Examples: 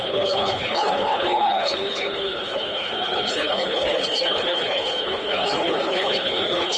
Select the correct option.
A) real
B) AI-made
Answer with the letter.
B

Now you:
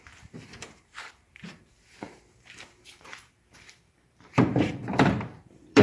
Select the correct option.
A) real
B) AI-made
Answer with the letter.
B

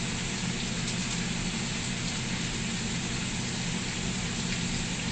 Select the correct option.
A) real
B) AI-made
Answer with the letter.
A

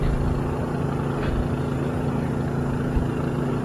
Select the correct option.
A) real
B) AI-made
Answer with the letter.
A